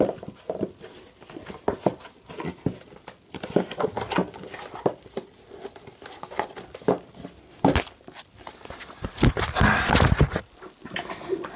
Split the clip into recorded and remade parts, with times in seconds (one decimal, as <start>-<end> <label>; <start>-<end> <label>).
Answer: 0.0-11.6 recorded

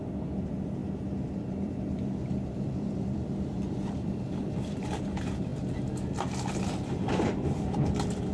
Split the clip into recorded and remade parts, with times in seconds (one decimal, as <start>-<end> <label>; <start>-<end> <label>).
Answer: 0.0-0.8 remade; 0.8-1.4 recorded; 1.4-5.5 remade; 5.5-6.5 recorded; 6.5-8.3 remade

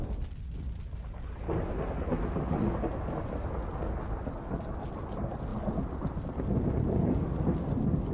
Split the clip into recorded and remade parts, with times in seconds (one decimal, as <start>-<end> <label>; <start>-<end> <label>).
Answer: 0.0-8.1 recorded

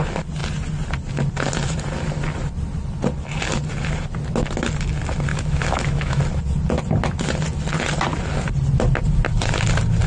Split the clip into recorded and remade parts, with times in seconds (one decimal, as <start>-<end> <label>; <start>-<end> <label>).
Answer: 0.0-5.3 recorded; 5.3-6.2 remade; 6.2-10.1 recorded

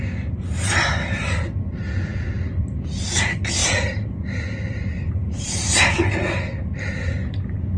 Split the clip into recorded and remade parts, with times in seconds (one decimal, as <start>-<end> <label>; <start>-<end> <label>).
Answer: 0.0-3.6 recorded; 3.6-5.4 remade; 5.4-7.8 recorded

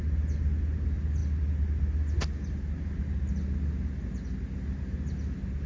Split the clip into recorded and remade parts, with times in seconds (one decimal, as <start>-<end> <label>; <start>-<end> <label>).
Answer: 0.0-5.7 recorded